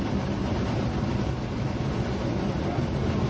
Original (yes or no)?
yes